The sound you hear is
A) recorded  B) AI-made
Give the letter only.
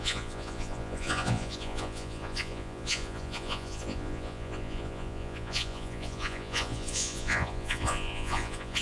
B